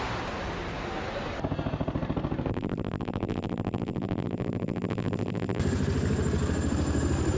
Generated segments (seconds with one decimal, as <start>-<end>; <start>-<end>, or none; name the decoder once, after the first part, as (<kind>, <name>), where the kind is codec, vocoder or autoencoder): 2.5-5.6 (vocoder, BigVGAN v2)